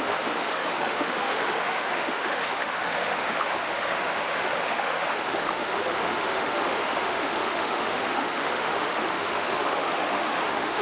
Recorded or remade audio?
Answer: remade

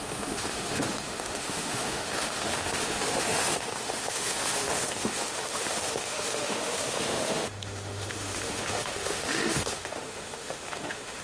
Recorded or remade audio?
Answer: remade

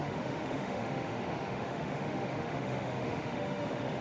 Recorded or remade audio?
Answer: remade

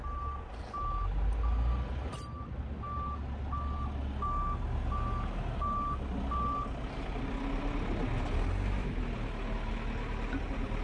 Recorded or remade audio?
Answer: recorded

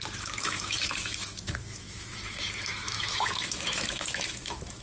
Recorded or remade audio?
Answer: remade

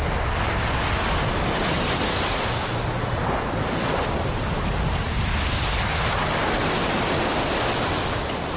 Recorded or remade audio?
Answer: recorded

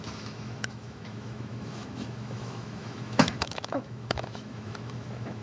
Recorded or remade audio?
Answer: remade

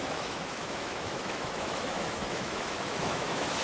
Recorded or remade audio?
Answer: remade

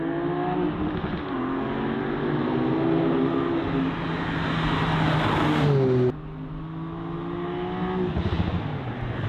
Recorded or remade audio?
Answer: recorded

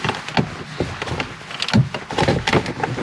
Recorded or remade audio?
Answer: recorded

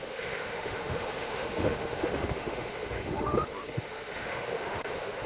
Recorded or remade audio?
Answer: remade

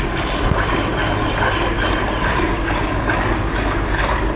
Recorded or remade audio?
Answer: recorded